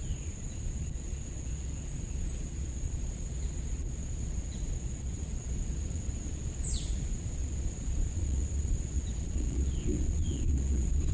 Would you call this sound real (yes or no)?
no